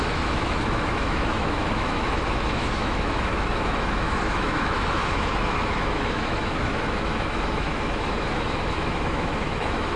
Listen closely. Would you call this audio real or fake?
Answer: fake